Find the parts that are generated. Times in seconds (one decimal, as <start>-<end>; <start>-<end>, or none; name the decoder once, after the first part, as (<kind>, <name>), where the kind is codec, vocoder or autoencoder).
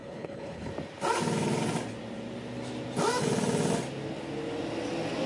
0.0-0.7 (codec, HILCodec)